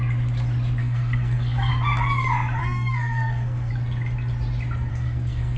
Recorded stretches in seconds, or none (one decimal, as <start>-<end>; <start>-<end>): 0.0-0.8; 1.7-2.6; 3.7-4.9